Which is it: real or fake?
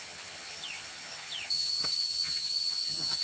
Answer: fake